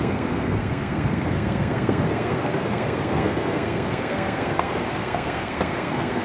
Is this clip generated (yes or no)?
yes